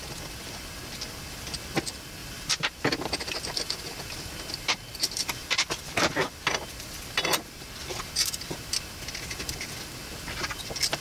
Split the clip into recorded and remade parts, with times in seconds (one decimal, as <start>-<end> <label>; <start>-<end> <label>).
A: 0.0-2.2 recorded; 2.2-5.7 remade; 5.7-11.0 recorded